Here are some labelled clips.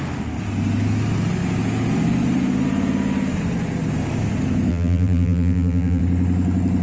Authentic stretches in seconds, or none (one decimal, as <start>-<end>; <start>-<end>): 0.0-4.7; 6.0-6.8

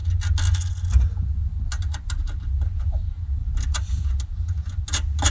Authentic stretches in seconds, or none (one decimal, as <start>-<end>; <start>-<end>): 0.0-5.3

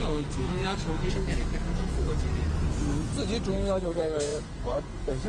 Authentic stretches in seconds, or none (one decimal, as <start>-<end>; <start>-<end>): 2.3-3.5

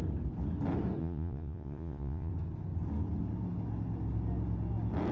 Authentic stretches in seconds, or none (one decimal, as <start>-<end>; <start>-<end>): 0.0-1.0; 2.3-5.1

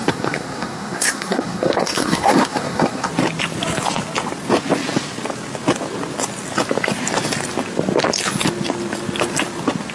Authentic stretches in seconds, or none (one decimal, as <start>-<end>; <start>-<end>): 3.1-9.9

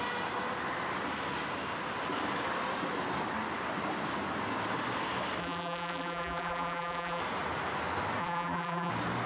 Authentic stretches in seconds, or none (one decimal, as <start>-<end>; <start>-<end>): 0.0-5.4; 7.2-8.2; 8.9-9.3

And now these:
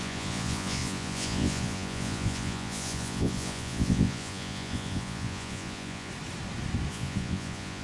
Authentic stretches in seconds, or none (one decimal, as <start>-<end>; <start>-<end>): 6.1-6.9